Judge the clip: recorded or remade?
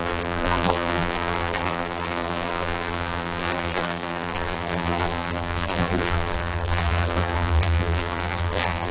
remade